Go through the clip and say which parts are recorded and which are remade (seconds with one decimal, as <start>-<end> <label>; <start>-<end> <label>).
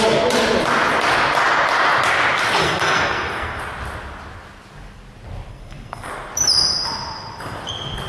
0.0-2.6 recorded; 2.6-3.6 remade; 3.6-5.5 recorded; 5.5-6.1 remade; 6.1-8.1 recorded